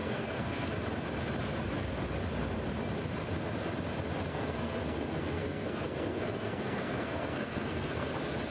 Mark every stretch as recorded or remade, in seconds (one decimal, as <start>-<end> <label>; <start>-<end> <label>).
0.0-0.7 remade; 0.7-4.3 recorded; 4.3-8.1 remade; 8.1-8.5 recorded